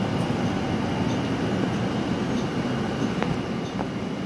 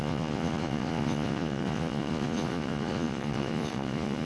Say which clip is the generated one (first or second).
second